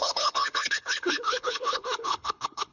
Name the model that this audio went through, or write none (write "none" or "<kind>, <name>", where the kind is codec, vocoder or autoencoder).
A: codec, HILCodec